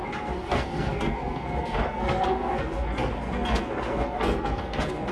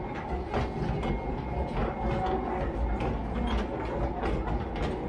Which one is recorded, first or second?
second